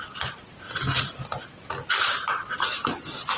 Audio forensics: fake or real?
real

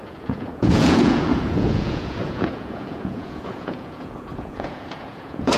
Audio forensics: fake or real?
fake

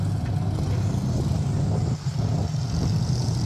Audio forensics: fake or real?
real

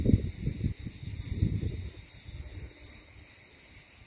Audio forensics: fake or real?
real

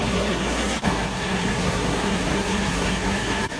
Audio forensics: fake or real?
fake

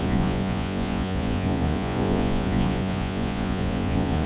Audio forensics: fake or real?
fake